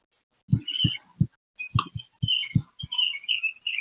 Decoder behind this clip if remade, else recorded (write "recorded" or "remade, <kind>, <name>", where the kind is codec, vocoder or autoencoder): recorded